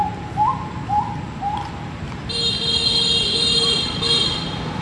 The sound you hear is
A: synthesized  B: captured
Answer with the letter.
B